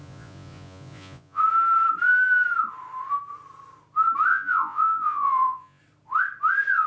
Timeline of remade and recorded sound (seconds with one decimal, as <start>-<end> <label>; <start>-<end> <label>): 0.0-1.4 remade; 1.4-4.3 recorded; 4.3-5.8 remade; 5.8-6.9 recorded